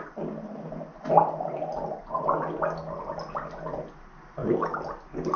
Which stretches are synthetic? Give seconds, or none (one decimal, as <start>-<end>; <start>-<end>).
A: none